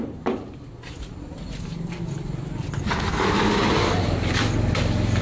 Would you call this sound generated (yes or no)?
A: no